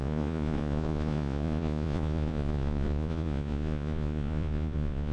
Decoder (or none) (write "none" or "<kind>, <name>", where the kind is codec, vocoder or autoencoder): vocoder, Vocos